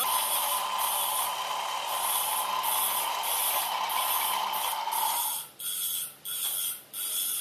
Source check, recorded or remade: recorded